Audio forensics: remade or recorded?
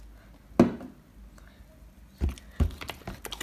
recorded